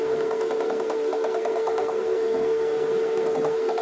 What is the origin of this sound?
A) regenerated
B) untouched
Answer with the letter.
A